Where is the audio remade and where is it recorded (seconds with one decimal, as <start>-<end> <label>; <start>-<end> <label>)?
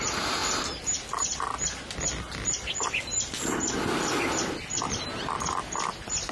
0.0-6.3 recorded